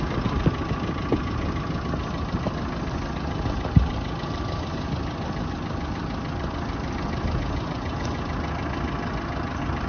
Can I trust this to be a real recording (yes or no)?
yes